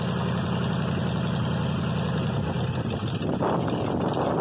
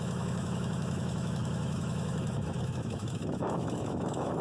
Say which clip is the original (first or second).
first